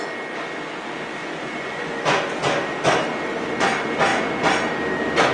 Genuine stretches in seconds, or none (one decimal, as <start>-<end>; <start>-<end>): 0.0-1.2; 2.2-5.3